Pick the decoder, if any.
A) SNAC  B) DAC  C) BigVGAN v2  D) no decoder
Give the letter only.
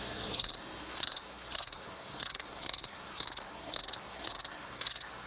A